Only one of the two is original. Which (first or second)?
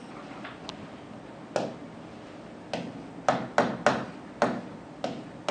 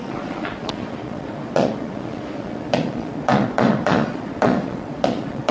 first